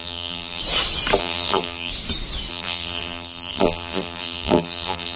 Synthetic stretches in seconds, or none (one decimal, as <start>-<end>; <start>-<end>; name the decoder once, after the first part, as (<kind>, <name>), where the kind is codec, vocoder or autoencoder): 0.0-0.6 (vocoder, BigVGAN v2); 1.2-1.9; 2.5-5.2